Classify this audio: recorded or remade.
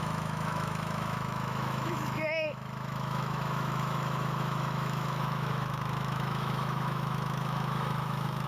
remade